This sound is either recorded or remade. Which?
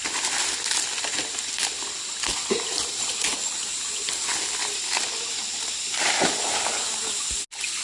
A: recorded